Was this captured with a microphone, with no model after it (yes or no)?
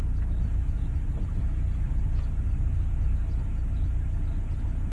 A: yes